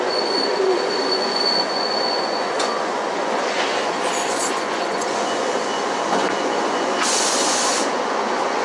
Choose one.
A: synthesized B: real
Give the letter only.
A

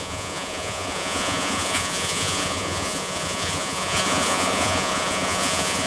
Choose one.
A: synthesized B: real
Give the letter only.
A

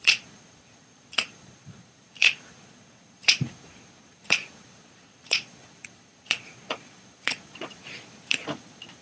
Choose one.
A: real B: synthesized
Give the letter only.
B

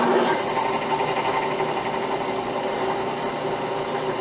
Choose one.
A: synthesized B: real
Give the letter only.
B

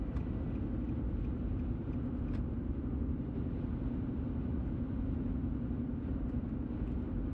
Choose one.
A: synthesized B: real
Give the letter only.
B